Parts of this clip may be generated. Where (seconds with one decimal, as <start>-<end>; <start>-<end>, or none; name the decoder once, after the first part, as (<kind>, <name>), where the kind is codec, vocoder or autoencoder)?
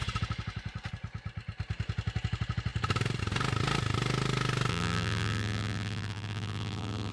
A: 4.7-7.1 (vocoder, BigVGAN v2)